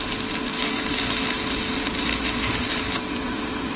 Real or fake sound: real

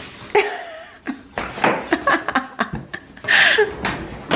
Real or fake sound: real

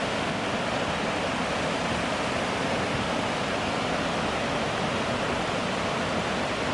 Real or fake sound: real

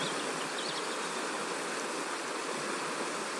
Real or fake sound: real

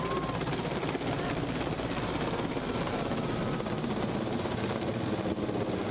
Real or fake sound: real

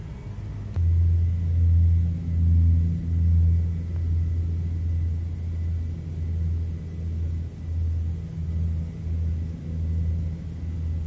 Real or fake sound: real